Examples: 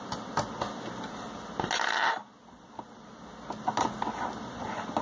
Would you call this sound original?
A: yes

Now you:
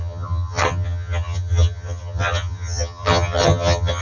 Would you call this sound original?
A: no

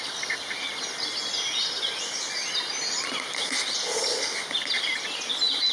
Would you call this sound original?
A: yes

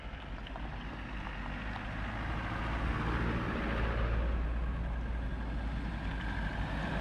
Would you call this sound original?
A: yes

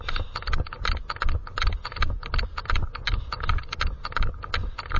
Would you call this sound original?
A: yes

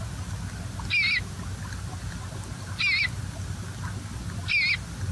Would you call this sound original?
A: yes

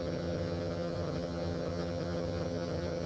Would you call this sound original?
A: no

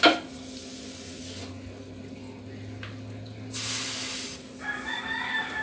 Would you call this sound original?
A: yes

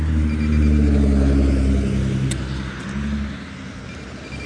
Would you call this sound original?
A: yes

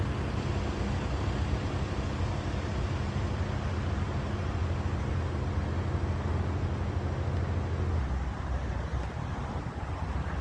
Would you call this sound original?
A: yes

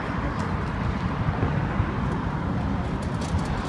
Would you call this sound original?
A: yes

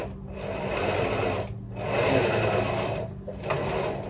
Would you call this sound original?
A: yes